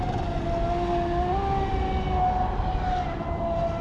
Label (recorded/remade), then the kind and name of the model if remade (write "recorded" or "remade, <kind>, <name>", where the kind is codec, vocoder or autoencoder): recorded